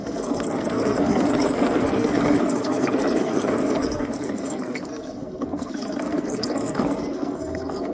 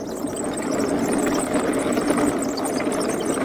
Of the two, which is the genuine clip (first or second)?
second